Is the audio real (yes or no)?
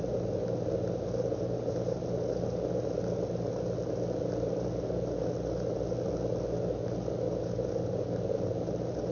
yes